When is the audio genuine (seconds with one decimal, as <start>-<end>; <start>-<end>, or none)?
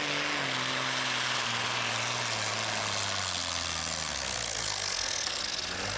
0.0-4.6; 5.4-6.0